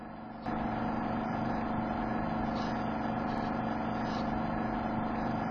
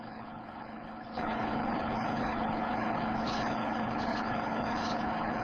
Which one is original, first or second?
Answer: first